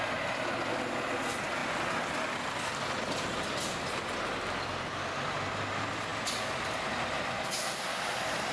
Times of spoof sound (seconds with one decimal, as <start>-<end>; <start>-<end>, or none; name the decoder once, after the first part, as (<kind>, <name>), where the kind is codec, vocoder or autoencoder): none